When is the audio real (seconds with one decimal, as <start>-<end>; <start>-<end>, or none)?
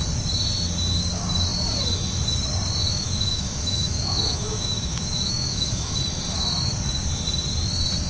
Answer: 0.0-2.8; 6.0-8.1